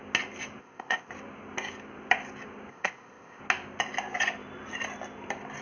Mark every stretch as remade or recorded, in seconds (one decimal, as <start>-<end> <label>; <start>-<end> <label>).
0.0-0.6 recorded; 0.6-1.1 remade; 1.1-2.7 recorded; 2.7-3.4 remade; 3.4-5.6 recorded